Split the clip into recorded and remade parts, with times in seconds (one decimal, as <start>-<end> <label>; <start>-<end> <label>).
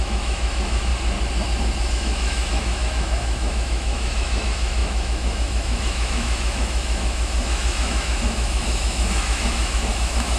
0.0-0.9 remade; 0.9-1.9 recorded; 1.9-10.4 remade